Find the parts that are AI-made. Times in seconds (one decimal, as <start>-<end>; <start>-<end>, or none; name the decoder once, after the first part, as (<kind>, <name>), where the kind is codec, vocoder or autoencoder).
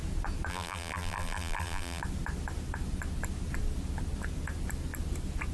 0.5-2.0 (vocoder, BigVGAN v2)